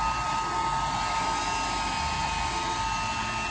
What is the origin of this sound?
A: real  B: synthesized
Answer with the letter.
A